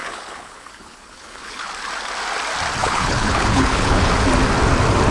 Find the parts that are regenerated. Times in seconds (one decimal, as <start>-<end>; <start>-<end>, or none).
0.0-1.7; 2.8-4.1